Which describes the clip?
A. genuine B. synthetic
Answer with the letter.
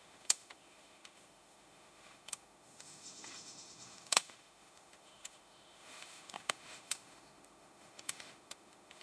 B